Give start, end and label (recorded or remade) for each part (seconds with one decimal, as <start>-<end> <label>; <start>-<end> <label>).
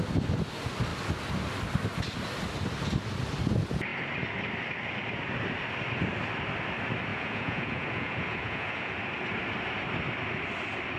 0.0-7.1 recorded; 7.1-8.9 remade; 8.9-11.0 recorded